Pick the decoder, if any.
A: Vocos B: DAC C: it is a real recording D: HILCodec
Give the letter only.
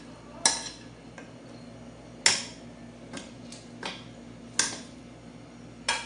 C